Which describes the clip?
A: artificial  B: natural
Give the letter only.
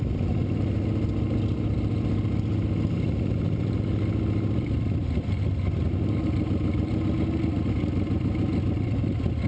B